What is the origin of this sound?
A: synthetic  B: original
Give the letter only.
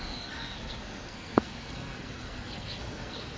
A